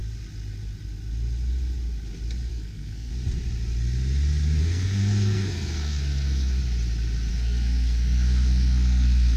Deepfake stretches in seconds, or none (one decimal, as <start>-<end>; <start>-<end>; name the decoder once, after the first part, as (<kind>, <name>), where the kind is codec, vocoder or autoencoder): 2.5-3.1 (codec, SNAC); 4.6-6.6; 7.3-9.4

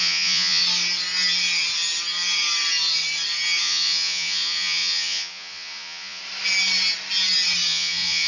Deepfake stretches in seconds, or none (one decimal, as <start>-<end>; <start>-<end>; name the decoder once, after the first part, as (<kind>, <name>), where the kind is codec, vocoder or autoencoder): 0.0-0.6 (vocoder, Vocos); 3.6-6.2; 7.7-8.3